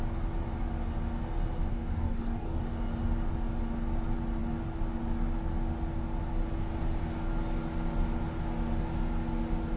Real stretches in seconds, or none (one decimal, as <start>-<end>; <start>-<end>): 0.0-1.7; 2.6-9.8